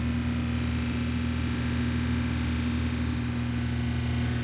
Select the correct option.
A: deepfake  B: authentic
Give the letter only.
B